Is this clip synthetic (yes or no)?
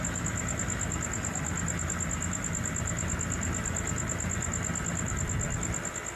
no